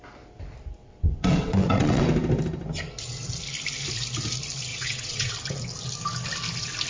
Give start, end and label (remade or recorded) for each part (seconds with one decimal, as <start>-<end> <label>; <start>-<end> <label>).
0.0-0.8 recorded; 0.8-2.0 remade; 2.0-4.7 recorded; 4.7-5.3 remade; 5.3-6.9 recorded

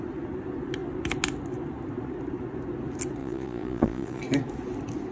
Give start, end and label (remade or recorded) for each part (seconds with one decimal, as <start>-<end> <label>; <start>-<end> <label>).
0.0-3.2 recorded; 3.2-4.2 remade; 4.2-5.1 recorded

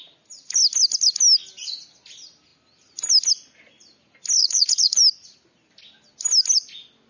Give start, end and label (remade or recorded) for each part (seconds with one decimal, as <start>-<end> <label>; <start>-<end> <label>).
0.0-4.4 recorded; 4.4-5.0 remade; 5.0-7.1 recorded

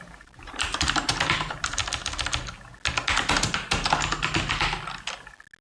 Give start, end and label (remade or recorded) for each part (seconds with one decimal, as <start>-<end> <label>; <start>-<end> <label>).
0.0-1.8 remade; 1.8-5.6 recorded

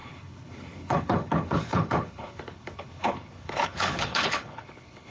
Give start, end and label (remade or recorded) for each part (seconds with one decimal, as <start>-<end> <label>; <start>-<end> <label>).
0.0-5.1 remade